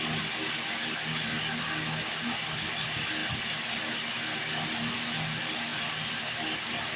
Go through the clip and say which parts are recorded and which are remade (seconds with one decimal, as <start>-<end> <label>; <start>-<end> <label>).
0.0-7.0 recorded